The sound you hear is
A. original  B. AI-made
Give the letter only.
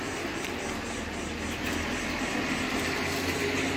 A